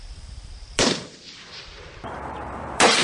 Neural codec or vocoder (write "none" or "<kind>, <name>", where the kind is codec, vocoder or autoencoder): vocoder, BigVGAN v2